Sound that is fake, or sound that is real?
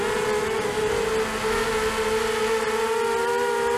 real